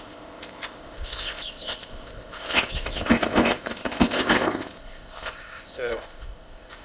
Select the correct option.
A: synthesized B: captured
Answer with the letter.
A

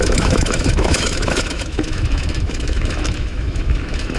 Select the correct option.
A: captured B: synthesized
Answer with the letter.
B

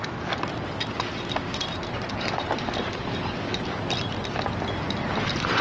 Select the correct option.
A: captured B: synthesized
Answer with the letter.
A